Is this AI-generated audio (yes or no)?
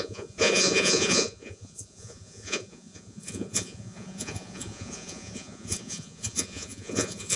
yes